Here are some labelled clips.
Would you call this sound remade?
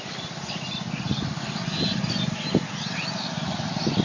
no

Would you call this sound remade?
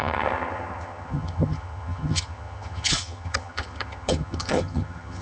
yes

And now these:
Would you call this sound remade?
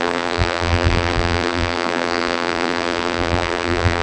yes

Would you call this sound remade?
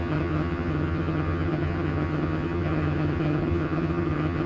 yes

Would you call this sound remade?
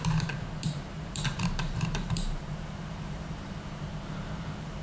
yes